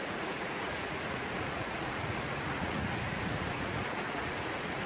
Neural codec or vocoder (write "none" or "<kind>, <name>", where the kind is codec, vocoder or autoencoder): vocoder, Vocos